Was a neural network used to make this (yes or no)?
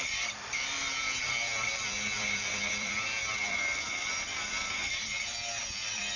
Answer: yes